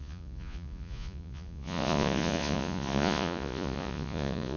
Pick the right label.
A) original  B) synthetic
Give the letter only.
B